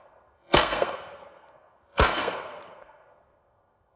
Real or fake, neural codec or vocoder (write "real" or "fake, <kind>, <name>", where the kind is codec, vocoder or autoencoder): fake, codec, SNAC